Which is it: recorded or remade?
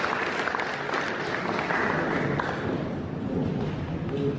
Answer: recorded